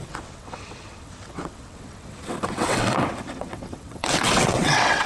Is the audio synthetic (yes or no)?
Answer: yes